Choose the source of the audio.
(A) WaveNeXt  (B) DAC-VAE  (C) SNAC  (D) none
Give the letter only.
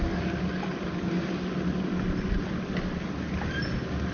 D